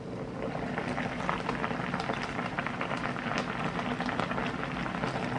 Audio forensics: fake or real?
real